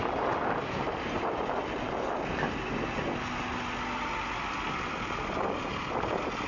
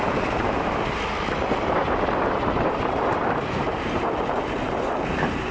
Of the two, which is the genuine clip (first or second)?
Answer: first